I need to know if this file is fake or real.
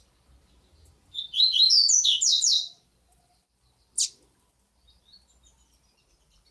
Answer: real